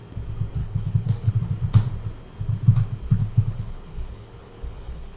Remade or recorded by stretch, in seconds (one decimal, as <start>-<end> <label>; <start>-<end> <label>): 0.0-0.6 recorded; 0.6-1.3 remade; 1.3-3.2 recorded; 3.2-5.2 remade